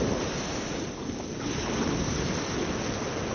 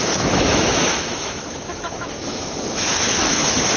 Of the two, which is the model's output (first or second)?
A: second